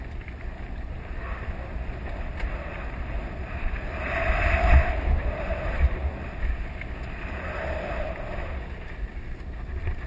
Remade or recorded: recorded